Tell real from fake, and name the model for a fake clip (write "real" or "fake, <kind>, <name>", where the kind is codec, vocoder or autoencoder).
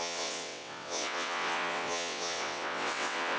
fake, vocoder, WaveNeXt